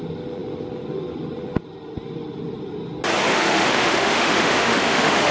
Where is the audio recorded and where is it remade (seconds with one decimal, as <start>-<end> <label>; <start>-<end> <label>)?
0.0-3.3 recorded; 3.3-5.3 remade